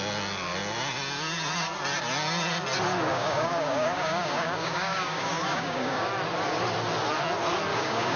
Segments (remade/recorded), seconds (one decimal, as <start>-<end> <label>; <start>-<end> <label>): 0.0-3.1 recorded; 3.1-6.1 remade; 6.1-7.7 recorded; 7.7-8.2 remade